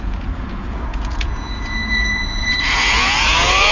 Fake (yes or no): yes